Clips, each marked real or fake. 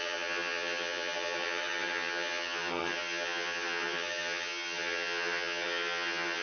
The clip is fake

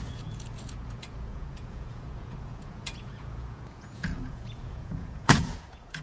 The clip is fake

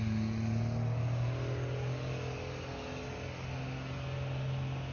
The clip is real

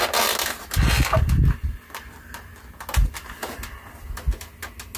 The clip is real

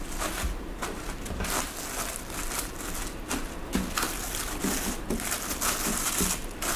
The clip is real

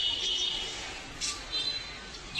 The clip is real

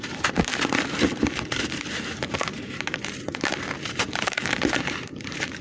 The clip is fake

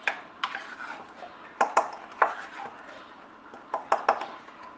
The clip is real